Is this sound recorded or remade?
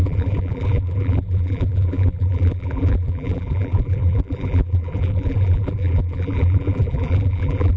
remade